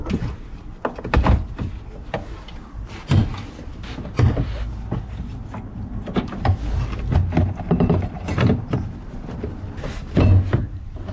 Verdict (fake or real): real